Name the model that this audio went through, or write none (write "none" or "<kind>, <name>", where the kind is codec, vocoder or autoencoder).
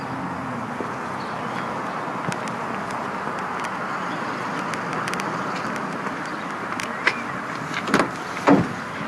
none